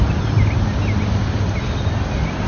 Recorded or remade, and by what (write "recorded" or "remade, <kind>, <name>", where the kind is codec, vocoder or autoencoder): recorded